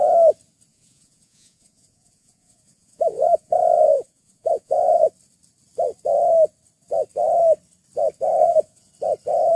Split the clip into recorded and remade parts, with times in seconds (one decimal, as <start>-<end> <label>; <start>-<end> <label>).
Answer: 0.0-0.7 recorded; 0.7-5.1 remade; 5.1-8.4 recorded; 8.4-8.9 remade; 8.9-9.6 recorded

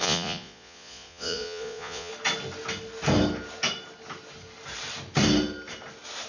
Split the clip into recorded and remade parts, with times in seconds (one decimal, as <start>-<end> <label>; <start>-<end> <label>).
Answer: 0.0-2.1 remade; 2.1-6.3 recorded

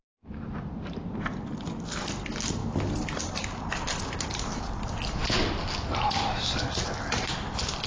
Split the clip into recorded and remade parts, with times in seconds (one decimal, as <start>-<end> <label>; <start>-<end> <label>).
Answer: 0.0-7.9 recorded

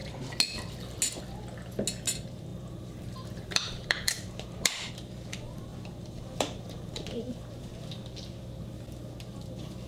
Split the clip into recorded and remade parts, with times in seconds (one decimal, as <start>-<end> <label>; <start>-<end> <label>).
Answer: 0.0-2.5 recorded; 2.5-4.9 remade; 4.9-5.7 recorded; 5.7-7.7 remade; 7.7-9.9 recorded

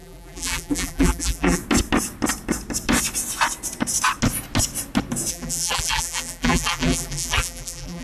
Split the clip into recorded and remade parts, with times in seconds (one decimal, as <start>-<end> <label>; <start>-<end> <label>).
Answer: 0.0-1.6 remade; 1.6-5.3 recorded; 5.3-8.0 remade

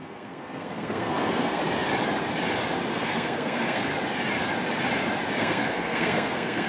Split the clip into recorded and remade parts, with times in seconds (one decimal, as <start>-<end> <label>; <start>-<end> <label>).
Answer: 0.0-1.6 remade; 1.6-2.9 recorded; 2.9-3.9 remade; 3.9-5.4 recorded; 5.4-6.7 remade